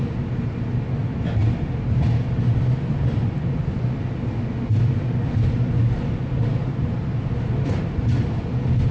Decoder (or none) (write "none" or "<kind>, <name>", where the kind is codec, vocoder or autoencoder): none